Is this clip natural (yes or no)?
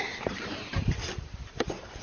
no